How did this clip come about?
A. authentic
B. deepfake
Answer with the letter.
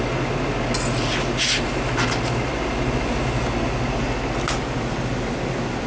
A